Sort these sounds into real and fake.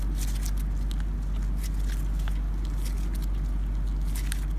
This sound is real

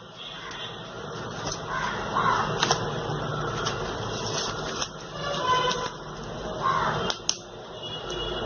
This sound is real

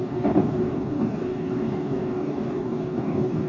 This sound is fake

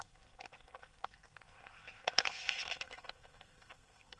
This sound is fake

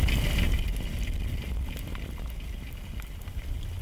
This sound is real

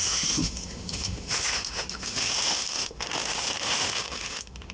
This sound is fake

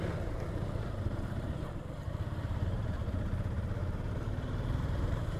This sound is fake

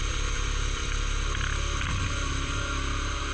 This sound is fake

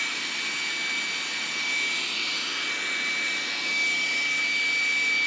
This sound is real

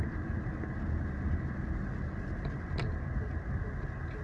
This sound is real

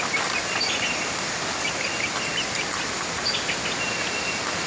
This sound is real